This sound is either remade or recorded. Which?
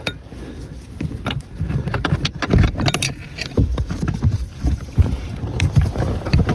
remade